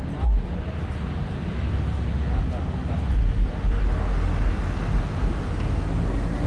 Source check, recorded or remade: recorded